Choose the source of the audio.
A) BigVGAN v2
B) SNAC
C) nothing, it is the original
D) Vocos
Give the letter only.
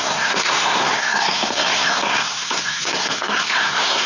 B